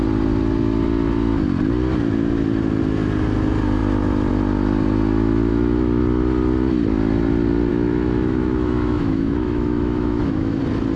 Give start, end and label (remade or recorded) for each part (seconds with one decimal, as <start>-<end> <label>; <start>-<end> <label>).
0.0-5.5 recorded; 5.5-6.0 remade; 6.0-7.7 recorded; 7.7-10.6 remade; 10.6-11.0 recorded